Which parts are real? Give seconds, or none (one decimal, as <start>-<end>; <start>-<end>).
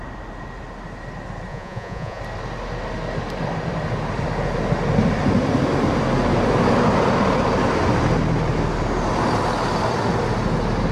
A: 0.0-1.5; 2.2-10.9